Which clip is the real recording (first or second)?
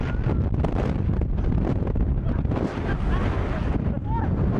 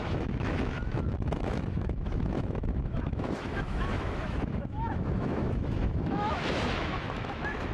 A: first